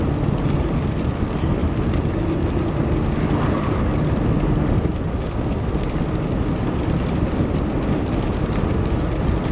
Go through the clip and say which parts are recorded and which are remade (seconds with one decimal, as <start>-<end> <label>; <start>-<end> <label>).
0.0-9.5 recorded